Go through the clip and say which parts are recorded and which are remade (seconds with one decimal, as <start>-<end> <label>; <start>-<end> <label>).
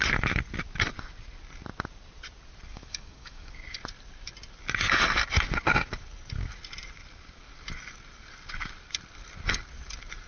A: 0.0-2.7 recorded; 2.7-3.5 remade; 3.5-10.3 recorded